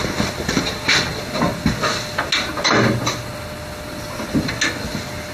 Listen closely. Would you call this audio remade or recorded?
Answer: recorded